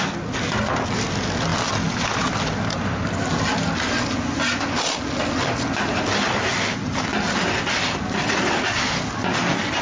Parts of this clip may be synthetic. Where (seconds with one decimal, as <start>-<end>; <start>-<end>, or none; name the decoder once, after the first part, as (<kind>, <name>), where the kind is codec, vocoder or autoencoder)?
none